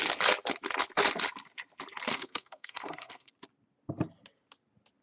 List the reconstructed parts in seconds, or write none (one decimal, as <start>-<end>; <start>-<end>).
2.1-3.3